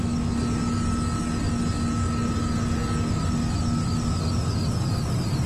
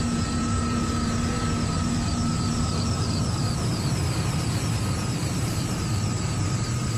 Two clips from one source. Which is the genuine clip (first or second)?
first